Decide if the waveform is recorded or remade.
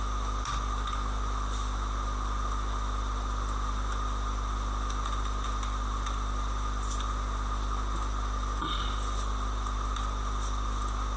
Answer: recorded